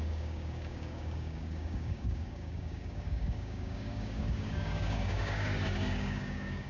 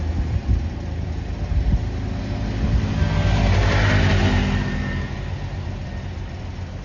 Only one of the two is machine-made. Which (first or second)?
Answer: first